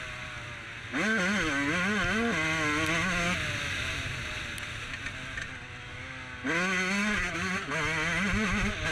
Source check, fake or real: real